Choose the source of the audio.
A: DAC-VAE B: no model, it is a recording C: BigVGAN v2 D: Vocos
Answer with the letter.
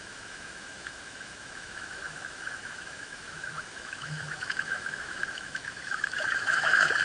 A